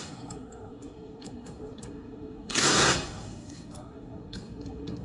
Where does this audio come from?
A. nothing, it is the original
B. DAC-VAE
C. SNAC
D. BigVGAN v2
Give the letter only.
C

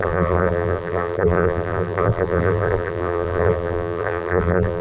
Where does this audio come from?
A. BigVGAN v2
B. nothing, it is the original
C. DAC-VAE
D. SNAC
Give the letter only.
A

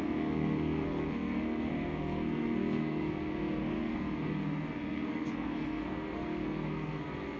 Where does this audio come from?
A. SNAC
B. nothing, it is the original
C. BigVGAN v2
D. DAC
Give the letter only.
A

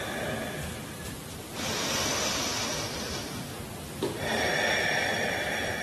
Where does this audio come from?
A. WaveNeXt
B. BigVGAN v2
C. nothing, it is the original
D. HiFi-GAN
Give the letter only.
C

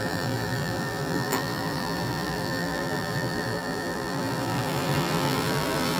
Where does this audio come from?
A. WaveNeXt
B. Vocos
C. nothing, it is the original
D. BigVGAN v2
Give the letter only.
D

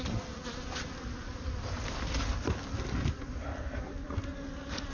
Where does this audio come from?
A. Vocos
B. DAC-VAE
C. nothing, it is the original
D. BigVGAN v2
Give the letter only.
C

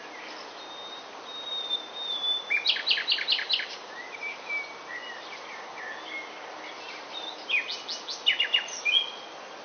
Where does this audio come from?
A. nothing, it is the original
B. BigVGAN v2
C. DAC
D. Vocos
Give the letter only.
A